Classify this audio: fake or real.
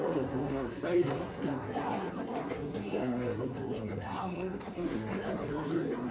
fake